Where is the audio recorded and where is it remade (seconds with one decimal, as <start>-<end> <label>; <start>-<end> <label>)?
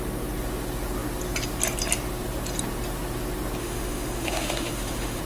0.0-3.6 recorded; 3.6-5.2 remade